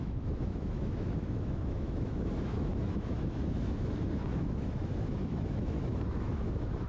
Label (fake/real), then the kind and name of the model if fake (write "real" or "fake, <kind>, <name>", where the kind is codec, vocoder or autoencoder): fake, autoencoder, DAC-VAE